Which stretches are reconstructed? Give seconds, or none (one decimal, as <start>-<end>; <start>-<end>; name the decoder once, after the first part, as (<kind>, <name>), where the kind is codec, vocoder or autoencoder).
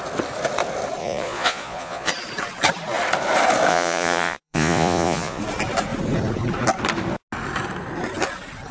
1.0-2.1 (vocoder, Vocos); 3.7-5.4